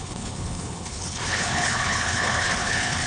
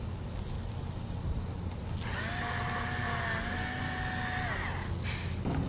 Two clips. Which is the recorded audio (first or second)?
second